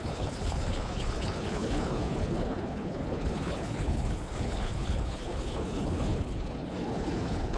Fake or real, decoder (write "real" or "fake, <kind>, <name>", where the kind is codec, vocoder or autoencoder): fake, codec, HILCodec